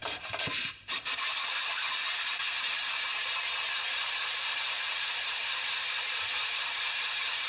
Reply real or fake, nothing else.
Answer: fake